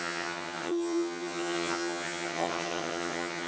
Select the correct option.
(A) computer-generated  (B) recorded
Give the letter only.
A